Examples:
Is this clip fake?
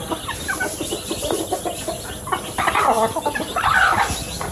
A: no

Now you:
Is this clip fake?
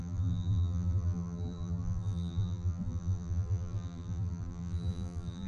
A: yes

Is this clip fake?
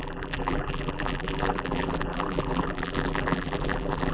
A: yes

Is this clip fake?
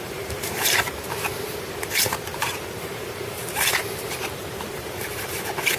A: yes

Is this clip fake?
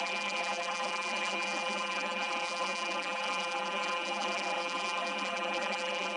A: yes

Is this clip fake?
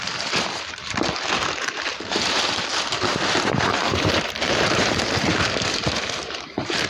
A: yes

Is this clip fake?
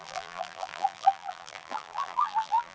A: yes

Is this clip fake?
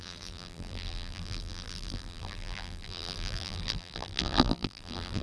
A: yes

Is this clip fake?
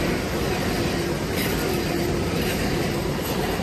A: no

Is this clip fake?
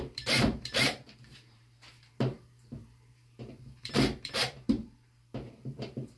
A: yes